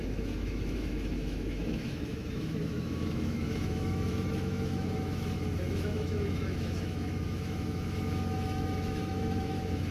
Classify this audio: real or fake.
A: fake